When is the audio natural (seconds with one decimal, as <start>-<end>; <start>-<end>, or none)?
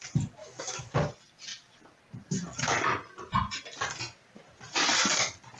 0.0-0.4; 1.0-5.6